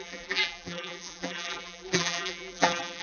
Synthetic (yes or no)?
yes